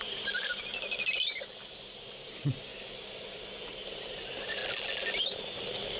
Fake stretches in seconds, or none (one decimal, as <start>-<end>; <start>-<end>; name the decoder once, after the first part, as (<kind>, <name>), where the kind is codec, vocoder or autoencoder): 0.0-0.7 (vocoder, BigVGAN v2); 2.0-2.7; 4.1-4.6; 5.2-6.0